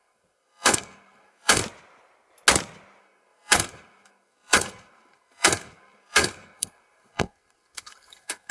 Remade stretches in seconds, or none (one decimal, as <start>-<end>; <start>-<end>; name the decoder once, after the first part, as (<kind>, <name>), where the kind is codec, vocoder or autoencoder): 0.0-1.6 (codec, SNAC); 3.0-8.5